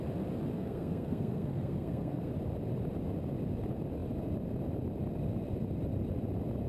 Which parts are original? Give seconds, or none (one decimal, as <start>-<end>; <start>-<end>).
0.0-0.5; 2.3-6.7